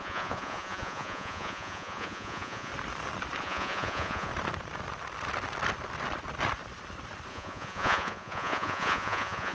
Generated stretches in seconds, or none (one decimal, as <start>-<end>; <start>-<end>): 0.0-2.7; 3.4-4.3; 7.3-9.5